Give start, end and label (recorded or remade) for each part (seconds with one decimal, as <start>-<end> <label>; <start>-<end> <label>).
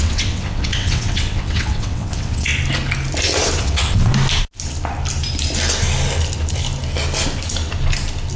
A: 0.0-2.5 remade; 2.5-3.6 recorded; 3.6-4.1 remade; 4.1-8.4 recorded